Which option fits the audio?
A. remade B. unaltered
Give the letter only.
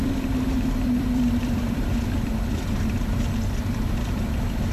A